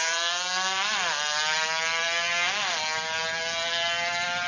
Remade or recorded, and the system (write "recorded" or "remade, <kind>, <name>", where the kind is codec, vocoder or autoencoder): recorded